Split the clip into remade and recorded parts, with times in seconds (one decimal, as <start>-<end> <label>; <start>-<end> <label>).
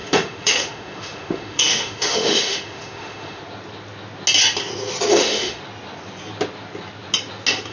0.0-3.4 remade; 3.4-5.1 recorded; 5.1-5.6 remade; 5.6-7.7 recorded